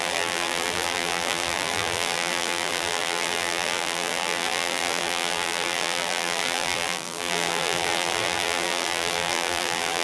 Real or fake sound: fake